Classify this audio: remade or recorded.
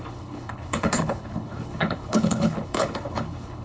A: remade